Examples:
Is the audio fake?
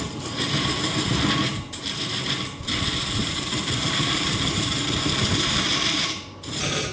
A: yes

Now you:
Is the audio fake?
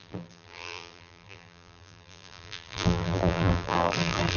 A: yes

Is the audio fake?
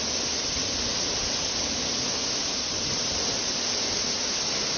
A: no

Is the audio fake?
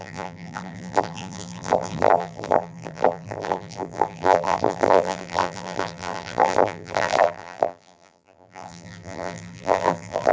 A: yes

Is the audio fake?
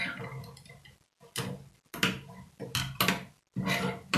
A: no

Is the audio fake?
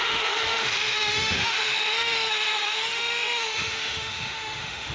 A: yes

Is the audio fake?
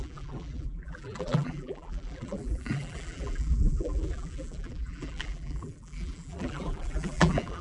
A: yes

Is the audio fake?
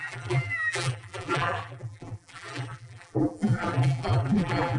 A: yes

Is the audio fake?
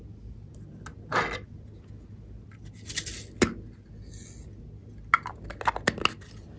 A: no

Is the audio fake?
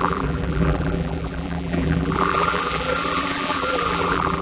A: yes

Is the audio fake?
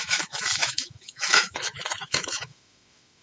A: yes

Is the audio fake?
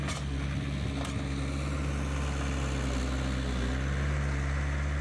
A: no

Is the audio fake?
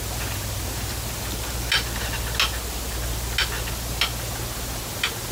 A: no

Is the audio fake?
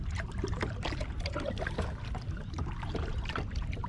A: yes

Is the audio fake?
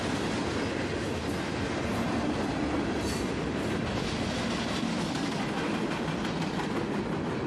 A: no